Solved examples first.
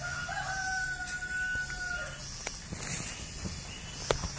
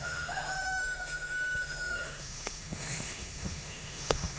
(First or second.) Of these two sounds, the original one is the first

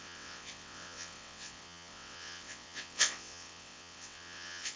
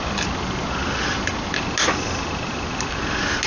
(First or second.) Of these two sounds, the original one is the second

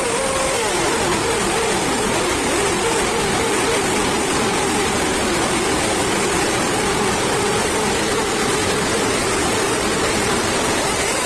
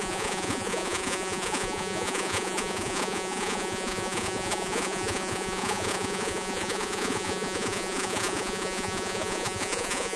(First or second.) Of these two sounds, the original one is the first